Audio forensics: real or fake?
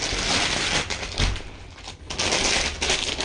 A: real